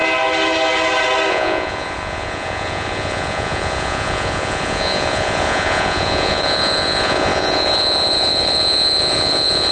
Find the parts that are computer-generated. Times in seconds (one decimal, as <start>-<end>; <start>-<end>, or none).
1.3-9.7